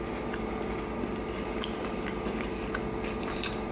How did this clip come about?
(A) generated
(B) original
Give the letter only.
B